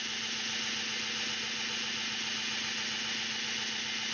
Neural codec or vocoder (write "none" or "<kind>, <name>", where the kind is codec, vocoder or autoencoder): none